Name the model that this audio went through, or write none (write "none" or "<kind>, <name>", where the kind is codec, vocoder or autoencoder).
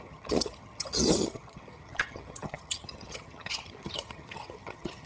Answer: vocoder, HiFi-GAN